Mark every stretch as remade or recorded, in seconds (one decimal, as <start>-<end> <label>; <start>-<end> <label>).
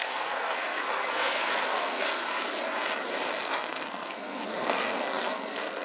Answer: 0.0-2.2 remade; 2.2-3.4 recorded; 3.4-5.8 remade